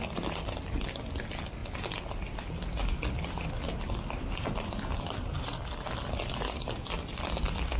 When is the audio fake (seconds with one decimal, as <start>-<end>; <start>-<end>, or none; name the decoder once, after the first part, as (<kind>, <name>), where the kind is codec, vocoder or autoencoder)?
none